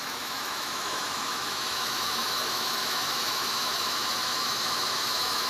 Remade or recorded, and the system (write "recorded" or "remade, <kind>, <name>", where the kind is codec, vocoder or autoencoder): remade, autoencoder, DAC-VAE